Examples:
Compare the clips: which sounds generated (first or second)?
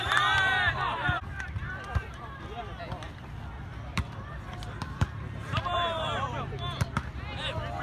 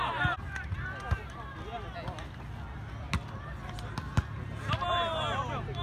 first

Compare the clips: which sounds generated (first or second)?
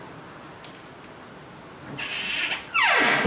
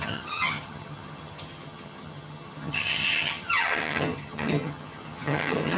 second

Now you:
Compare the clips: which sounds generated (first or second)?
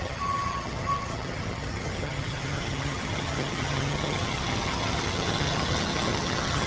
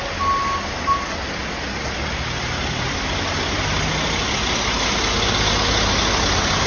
first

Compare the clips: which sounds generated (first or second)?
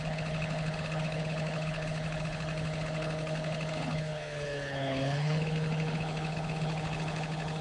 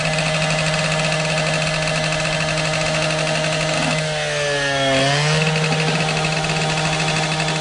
first